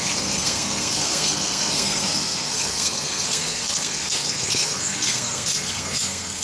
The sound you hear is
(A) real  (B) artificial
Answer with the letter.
B